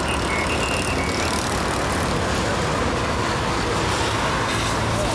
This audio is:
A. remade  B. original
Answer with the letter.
B